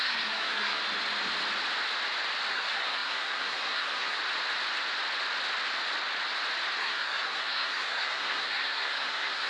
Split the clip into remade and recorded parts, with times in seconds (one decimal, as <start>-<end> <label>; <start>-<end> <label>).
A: 0.0-0.8 remade; 0.8-2.5 recorded; 2.5-4.2 remade; 4.2-6.8 recorded; 6.8-9.5 remade